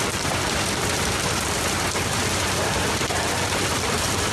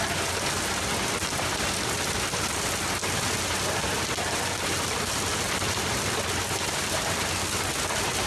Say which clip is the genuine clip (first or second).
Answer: second